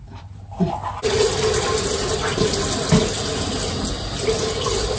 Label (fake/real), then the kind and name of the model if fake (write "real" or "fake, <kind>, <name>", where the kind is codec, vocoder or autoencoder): real